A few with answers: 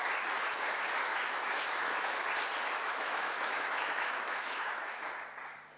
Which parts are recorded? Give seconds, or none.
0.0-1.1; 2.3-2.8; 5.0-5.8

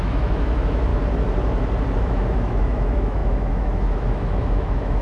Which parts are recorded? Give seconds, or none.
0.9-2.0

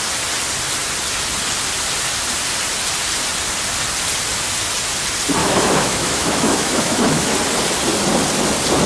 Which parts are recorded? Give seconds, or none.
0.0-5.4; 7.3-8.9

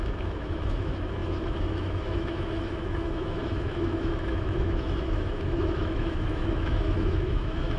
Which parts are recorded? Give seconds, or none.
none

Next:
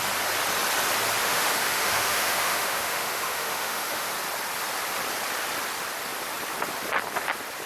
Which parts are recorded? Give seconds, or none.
0.0-1.2; 4.1-7.7

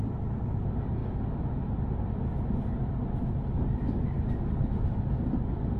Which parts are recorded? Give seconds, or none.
0.0-5.8

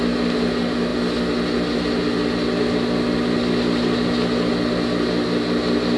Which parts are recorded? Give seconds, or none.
0.0-6.0

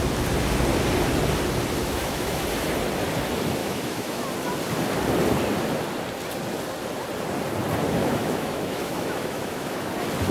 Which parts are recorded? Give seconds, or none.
0.0-1.8; 2.4-3.6; 4.2-8.0; 9.9-10.3